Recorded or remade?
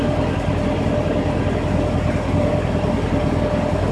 recorded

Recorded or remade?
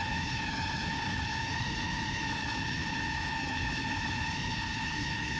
remade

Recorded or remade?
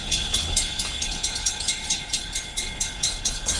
remade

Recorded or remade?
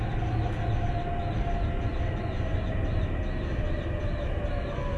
recorded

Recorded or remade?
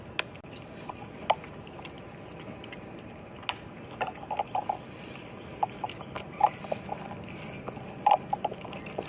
recorded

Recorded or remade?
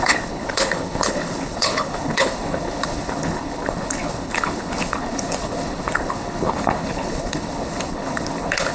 remade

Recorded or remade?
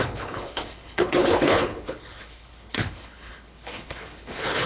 remade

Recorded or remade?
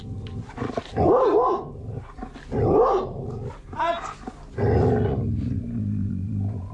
recorded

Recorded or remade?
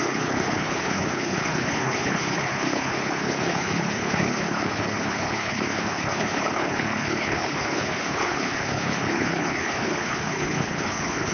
remade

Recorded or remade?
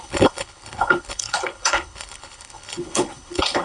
remade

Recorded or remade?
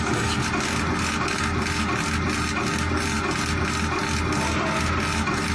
recorded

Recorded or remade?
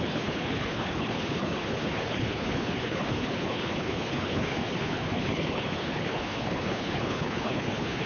remade